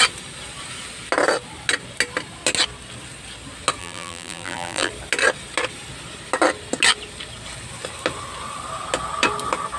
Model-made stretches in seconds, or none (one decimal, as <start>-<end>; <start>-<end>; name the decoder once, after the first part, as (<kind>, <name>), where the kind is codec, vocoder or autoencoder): 3.8-4.9 (vocoder, BigVGAN v2)